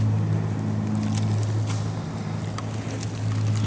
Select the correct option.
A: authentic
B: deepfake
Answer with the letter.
A